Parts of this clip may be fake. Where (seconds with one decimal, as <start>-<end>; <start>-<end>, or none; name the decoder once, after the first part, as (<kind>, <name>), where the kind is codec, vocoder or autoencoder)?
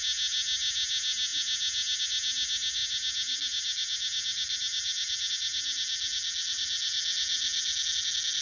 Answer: none